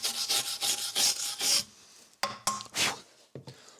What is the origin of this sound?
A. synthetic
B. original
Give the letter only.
B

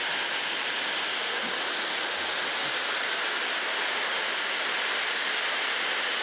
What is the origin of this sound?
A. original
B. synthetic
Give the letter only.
A